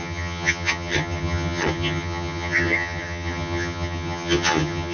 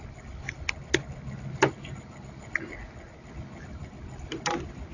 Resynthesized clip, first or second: first